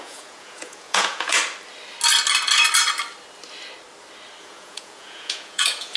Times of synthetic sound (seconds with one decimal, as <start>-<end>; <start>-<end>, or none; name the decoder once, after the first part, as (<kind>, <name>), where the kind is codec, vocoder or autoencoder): 0.0-1.4 (vocoder, Vocos); 4.4-6.0